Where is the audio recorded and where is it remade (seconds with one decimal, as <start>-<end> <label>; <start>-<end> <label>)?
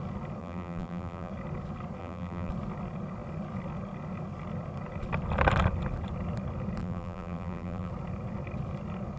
0.0-0.4 recorded; 0.4-1.3 remade; 1.3-2.0 recorded; 2.0-2.5 remade; 2.5-6.8 recorded; 6.8-7.9 remade; 7.9-9.2 recorded